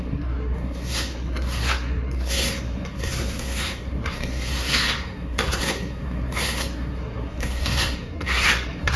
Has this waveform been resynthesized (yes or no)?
yes